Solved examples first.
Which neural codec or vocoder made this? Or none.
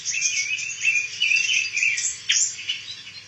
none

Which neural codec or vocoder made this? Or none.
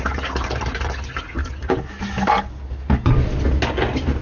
none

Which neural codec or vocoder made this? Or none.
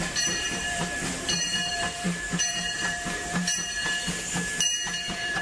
vocoder, BigVGAN v2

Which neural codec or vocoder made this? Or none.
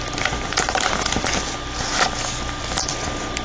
none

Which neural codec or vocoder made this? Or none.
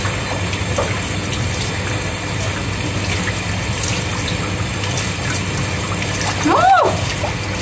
none